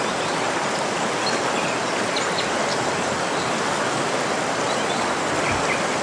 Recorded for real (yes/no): yes